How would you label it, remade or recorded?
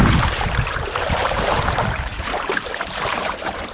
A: remade